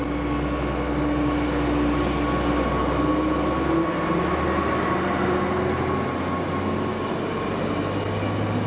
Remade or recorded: recorded